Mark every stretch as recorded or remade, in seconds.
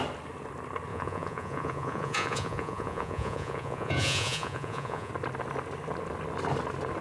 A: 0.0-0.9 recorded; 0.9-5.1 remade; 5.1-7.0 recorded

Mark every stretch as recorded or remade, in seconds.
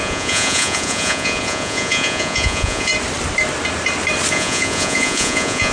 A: 0.0-2.9 remade; 2.9-4.3 recorded; 4.3-5.7 remade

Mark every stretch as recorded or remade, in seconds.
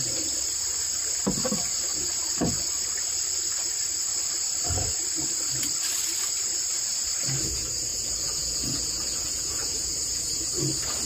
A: 0.0-7.9 recorded; 7.9-10.5 remade; 10.5-11.1 recorded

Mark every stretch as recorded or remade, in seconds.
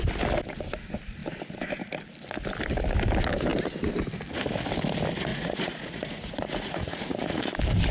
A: 0.0-5.3 recorded; 5.3-7.4 remade; 7.4-7.9 recorded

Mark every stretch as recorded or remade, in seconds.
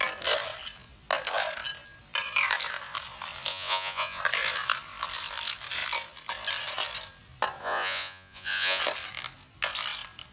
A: 0.0-3.5 recorded; 3.5-4.2 remade; 4.2-7.6 recorded; 7.6-8.8 remade; 8.8-10.3 recorded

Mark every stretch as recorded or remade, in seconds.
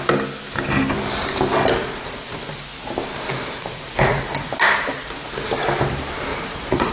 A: 0.0-1.8 recorded; 1.8-2.6 remade; 2.6-3.3 recorded; 3.3-4.5 remade; 4.5-6.3 recorded; 6.3-6.9 remade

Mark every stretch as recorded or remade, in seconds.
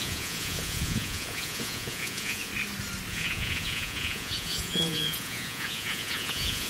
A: 0.0-2.5 remade; 2.5-3.1 recorded; 3.1-6.7 remade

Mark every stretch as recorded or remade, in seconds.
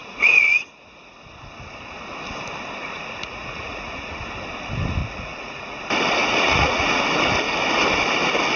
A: 0.0-1.1 remade; 1.1-2.8 recorded; 2.8-4.2 remade; 4.2-5.0 recorded; 5.0-5.8 remade; 5.8-6.2 recorded; 6.2-7.0 remade; 7.0-8.6 recorded